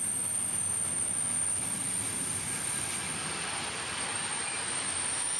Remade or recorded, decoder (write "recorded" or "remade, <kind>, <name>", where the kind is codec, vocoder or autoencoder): recorded